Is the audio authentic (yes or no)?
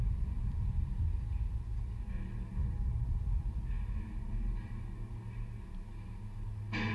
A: yes